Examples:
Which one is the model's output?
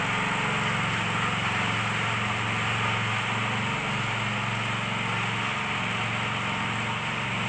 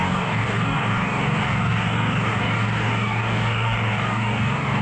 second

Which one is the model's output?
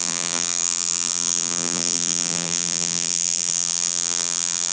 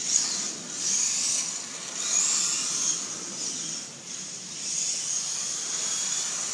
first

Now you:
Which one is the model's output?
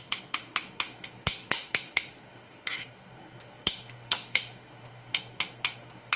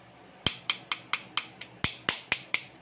first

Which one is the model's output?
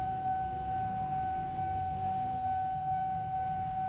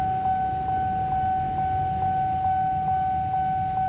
first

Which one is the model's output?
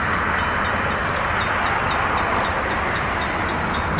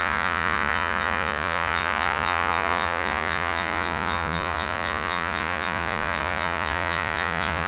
second